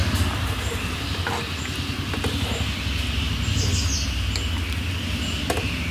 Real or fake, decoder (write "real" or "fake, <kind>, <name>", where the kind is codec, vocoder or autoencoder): real